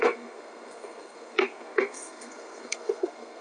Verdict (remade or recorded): remade